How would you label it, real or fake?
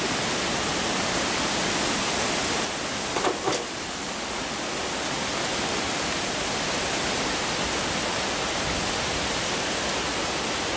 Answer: real